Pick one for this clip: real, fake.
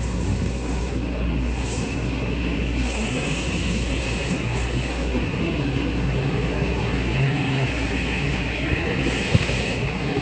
fake